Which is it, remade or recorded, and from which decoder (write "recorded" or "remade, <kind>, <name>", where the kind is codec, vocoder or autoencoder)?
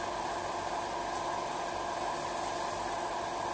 recorded